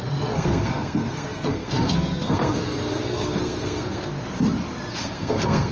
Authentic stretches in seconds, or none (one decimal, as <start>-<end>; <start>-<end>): 4.1-4.9